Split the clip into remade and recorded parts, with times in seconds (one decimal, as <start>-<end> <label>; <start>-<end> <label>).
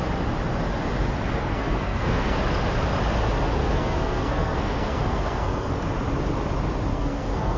0.0-1.4 recorded; 1.4-2.4 remade; 2.4-3.6 recorded; 3.6-5.7 remade; 5.7-6.9 recorded; 6.9-7.6 remade